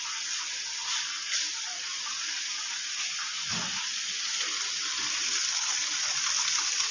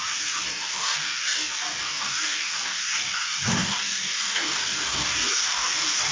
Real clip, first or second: first